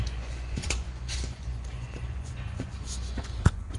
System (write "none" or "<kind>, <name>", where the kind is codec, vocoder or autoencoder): vocoder, Vocos